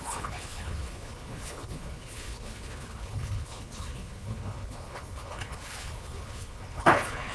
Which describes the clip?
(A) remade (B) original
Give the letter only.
A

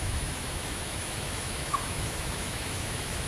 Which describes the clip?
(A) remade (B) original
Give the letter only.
A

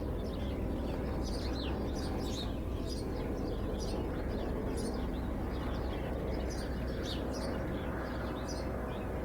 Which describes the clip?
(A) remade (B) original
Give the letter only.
B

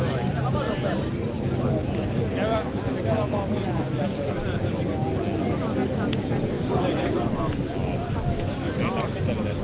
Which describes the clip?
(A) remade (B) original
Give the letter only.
B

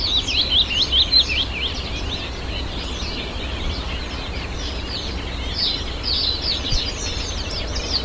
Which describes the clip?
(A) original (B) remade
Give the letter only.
A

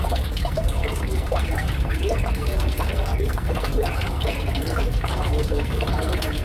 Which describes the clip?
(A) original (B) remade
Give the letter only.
B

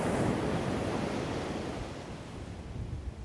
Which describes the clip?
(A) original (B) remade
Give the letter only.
A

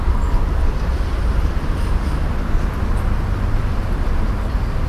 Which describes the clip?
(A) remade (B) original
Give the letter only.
B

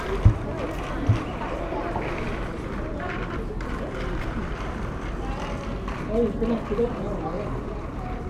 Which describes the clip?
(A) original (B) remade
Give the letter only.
B